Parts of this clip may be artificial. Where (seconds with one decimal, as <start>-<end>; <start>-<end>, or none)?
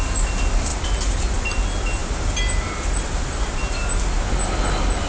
none